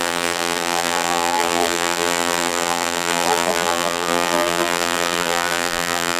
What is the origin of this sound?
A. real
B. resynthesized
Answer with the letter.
B